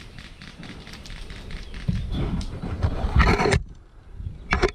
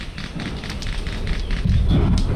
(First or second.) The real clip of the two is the second